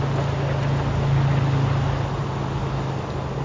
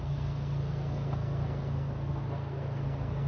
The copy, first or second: second